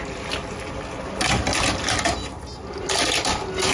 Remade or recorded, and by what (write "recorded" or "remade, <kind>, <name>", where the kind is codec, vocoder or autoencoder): recorded